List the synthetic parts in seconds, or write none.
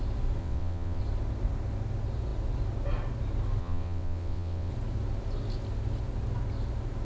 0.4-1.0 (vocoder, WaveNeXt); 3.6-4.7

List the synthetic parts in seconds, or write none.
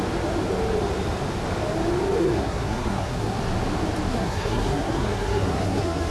2.2-3.4 (codec, SNAC); 4.1-6.1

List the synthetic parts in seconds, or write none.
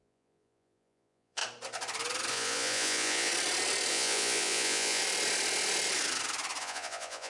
0.0-1.4 (vocoder, Vocos); 2.3-3.3; 3.9-5.0; 6.6-7.3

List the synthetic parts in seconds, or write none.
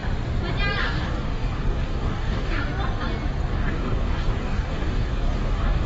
0.8-2.6 (codec, DAC); 3.5-5.9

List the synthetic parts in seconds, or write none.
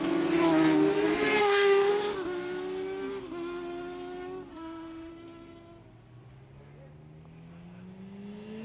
1.4-1.9 (autoencoder, DAC-VAE); 4.5-5.1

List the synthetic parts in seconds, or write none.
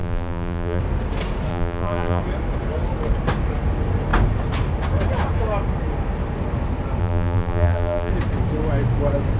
0.0-0.8 (vocoder, BigVGAN v2); 1.5-2.2; 7.0-8.1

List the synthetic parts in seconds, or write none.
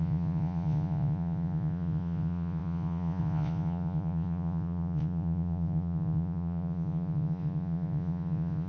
0.0-8.7 (vocoder, Vocos)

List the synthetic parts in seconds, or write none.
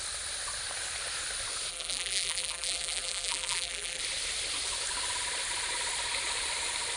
1.7-4.0 (vocoder, BigVGAN v2)